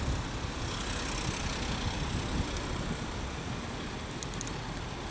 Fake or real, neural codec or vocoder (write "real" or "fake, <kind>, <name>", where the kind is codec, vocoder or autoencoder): real